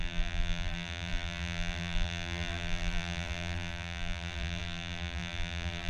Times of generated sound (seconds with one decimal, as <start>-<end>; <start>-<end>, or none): 0.0-5.9